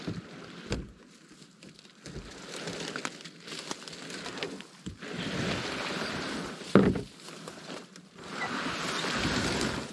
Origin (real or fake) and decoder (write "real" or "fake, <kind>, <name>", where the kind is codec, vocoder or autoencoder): real